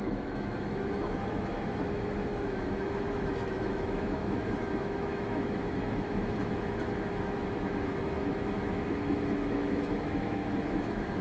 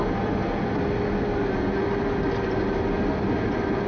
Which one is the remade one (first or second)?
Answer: first